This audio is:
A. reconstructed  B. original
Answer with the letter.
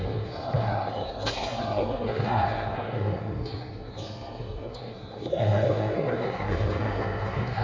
A